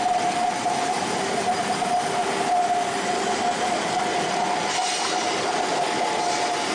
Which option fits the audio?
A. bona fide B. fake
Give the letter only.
A